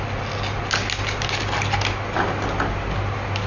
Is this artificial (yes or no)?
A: no